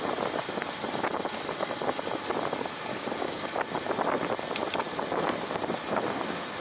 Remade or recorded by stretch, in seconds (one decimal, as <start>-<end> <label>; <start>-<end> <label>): 0.0-2.9 recorded; 2.9-3.6 remade; 3.6-6.6 recorded